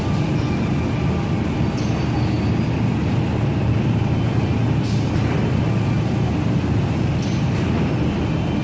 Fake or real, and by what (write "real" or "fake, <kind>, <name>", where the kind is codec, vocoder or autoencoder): real